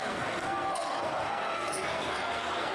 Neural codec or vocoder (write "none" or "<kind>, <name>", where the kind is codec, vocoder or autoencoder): codec, SNAC